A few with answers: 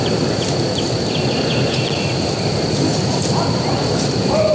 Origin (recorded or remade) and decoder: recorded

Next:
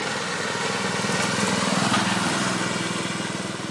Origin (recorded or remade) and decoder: recorded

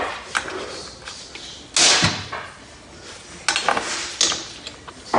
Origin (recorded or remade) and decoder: recorded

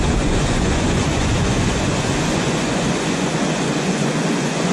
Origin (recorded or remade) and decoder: remade, vocoder, Vocos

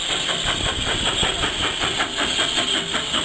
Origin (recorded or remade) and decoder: recorded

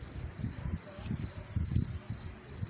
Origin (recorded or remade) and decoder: recorded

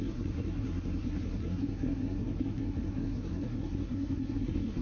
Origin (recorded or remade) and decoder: remade, codec, SNAC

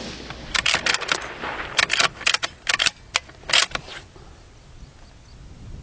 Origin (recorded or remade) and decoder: recorded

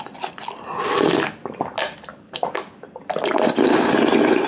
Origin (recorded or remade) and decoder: recorded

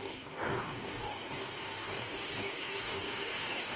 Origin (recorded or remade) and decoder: remade, codec, DAC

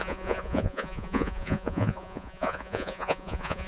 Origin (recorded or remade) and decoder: remade, vocoder, Vocos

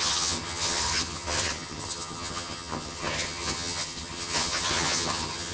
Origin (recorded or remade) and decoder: remade, vocoder, HiFi-GAN